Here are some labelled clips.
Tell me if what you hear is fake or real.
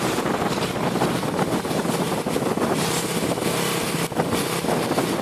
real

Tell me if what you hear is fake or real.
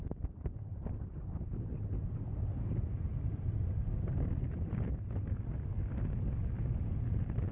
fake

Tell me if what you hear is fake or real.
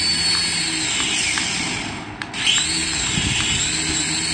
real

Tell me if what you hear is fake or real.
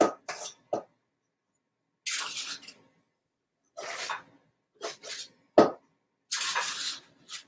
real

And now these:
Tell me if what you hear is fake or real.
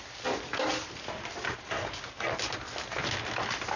real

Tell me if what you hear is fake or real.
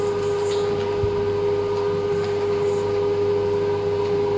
fake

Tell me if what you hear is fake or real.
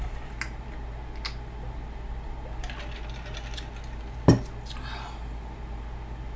real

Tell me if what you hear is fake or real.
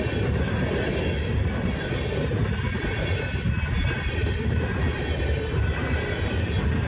fake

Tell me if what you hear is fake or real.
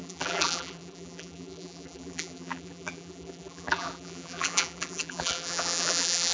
fake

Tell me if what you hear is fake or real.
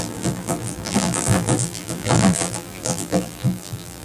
fake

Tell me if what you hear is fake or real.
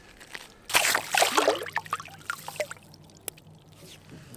real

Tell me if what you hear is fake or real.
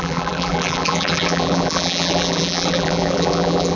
fake